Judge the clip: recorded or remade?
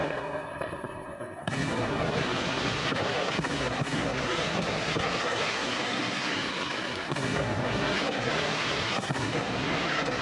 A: remade